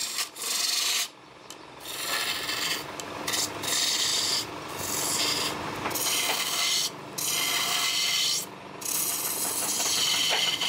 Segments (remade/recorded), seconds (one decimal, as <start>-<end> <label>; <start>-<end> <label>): 0.0-1.5 remade; 1.5-10.7 recorded